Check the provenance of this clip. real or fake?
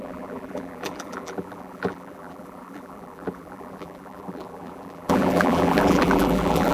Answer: fake